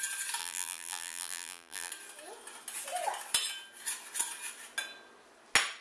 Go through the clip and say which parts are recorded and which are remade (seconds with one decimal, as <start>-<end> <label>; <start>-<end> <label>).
0.0-0.4 recorded; 0.4-1.9 remade; 1.9-5.8 recorded